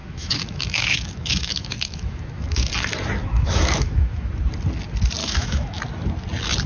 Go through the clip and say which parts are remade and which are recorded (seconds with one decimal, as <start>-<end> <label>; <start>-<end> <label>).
0.0-2.7 remade; 2.7-3.2 recorded; 3.2-4.3 remade; 4.3-5.2 recorded; 5.2-5.8 remade; 5.8-6.7 recorded